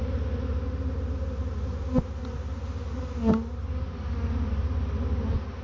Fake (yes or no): no